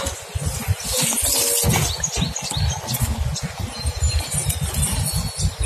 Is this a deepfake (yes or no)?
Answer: no